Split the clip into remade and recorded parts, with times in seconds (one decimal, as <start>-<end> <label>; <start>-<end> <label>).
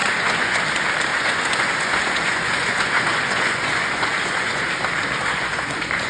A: 0.0-0.6 remade; 0.6-1.1 recorded; 1.1-4.7 remade; 4.7-5.2 recorded; 5.2-6.1 remade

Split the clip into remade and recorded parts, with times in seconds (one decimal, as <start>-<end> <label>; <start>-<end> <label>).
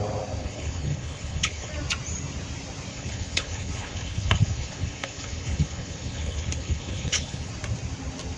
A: 0.0-0.4 recorded; 0.4-1.7 remade; 1.7-2.9 recorded; 2.9-7.5 remade; 7.5-8.4 recorded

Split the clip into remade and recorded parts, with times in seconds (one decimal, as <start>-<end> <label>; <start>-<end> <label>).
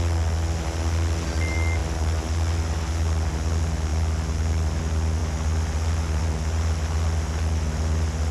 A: 0.0-8.3 recorded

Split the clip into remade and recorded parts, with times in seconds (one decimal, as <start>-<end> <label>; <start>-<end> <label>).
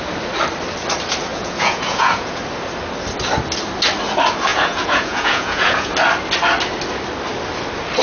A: 0.0-1.3 recorded; 1.3-2.4 remade; 2.4-4.5 recorded; 4.5-5.9 remade; 5.9-8.0 recorded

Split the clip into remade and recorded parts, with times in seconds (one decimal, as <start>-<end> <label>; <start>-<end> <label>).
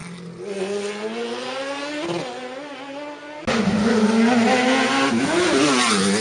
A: 0.0-6.2 recorded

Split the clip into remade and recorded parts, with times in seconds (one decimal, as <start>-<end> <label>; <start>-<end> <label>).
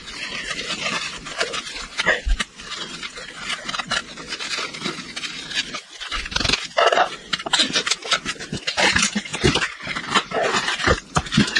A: 0.0-4.0 remade; 4.0-7.1 recorded; 7.1-8.0 remade; 8.0-8.9 recorded; 8.9-11.6 remade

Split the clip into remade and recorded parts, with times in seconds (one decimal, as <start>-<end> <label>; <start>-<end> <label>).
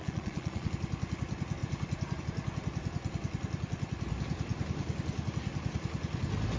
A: 0.0-0.7 remade; 0.7-6.6 recorded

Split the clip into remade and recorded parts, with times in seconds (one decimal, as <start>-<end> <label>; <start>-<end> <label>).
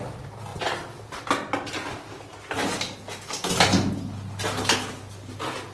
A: 0.0-5.7 recorded